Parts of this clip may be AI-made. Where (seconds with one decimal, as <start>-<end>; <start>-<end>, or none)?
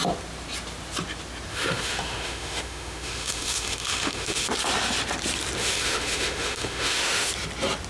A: 1.5-4.5; 5.6-7.3